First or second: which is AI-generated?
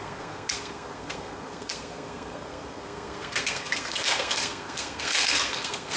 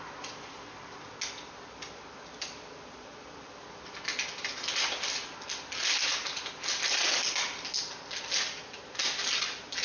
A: first